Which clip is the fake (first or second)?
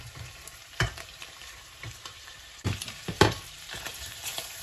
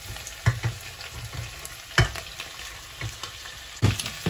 first